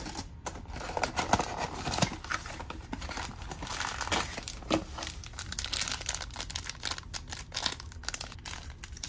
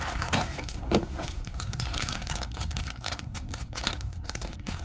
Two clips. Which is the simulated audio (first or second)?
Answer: second